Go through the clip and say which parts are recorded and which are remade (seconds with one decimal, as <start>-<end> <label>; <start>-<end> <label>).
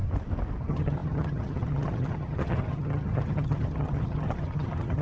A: 0.0-0.6 recorded; 0.6-5.0 remade